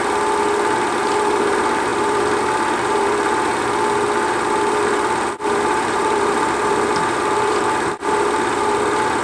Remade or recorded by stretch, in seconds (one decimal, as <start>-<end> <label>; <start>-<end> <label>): 0.0-1.0 recorded; 1.0-3.5 remade; 3.5-4.7 recorded; 4.7-9.2 remade